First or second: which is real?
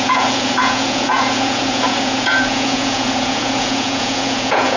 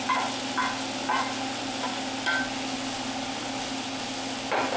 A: second